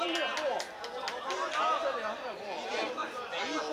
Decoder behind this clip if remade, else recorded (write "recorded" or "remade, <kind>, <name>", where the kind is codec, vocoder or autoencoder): recorded